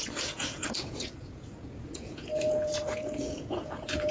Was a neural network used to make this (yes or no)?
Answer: yes